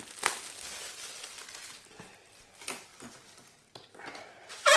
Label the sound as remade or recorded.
recorded